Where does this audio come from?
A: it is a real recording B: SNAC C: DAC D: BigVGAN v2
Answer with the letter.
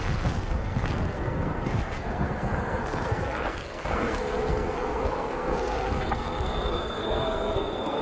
B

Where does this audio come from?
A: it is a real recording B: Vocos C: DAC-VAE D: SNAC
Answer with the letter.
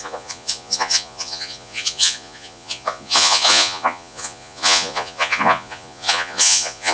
B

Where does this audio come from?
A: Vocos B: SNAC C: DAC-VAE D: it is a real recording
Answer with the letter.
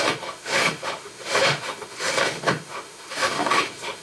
C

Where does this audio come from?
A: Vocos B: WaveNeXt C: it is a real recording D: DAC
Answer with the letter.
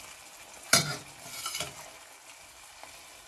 C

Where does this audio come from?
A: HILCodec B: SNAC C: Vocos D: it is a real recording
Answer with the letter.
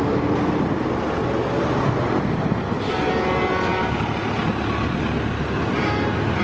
D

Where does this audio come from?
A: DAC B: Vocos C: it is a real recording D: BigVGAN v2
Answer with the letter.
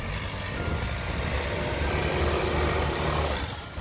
C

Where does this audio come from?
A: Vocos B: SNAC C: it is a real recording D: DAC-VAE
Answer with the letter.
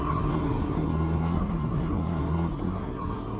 B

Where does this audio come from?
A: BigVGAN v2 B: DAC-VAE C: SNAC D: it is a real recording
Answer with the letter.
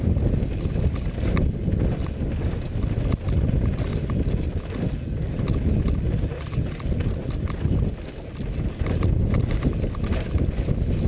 D